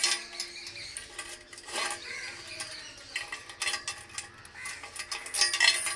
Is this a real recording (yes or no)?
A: yes